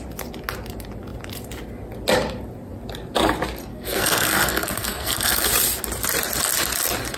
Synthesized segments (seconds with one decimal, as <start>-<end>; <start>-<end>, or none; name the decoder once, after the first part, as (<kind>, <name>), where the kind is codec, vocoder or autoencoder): 3.7-5.5 (codec, SNAC)